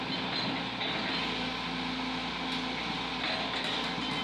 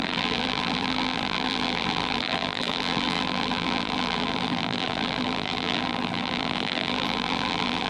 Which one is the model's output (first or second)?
second